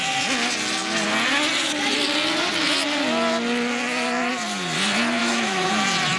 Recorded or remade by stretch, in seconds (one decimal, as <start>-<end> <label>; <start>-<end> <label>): 0.0-5.2 recorded; 5.2-5.7 remade; 5.7-6.2 recorded